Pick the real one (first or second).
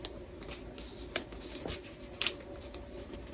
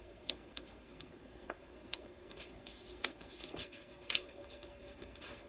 first